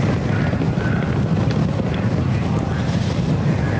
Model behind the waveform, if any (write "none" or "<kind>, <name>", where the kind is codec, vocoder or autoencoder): none